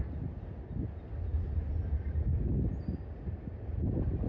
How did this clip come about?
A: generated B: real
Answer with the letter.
B